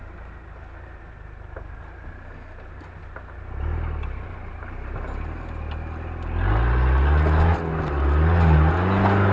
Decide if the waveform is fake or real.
real